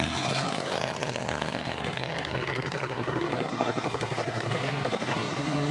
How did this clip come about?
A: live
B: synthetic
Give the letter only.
B